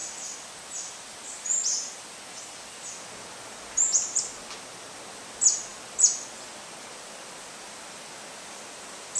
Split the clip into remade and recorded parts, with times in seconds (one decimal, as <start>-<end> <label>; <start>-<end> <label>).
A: 0.0-9.2 recorded